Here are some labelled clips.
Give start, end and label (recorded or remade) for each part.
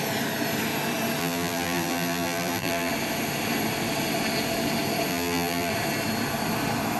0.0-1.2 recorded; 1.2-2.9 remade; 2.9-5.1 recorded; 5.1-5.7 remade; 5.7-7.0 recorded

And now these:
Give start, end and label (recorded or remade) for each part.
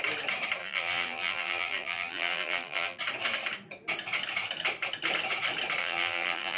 0.0-0.6 recorded; 0.6-3.0 remade; 3.0-5.8 recorded; 5.8-6.6 remade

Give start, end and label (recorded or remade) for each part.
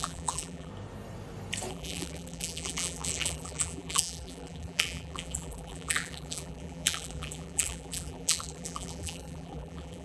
0.0-0.7 remade; 0.7-1.7 recorded; 1.7-10.0 remade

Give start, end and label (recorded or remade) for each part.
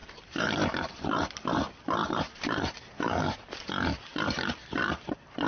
0.0-1.3 remade; 1.3-2.0 recorded; 2.0-3.5 remade; 3.5-5.5 recorded